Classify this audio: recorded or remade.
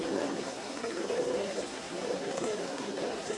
remade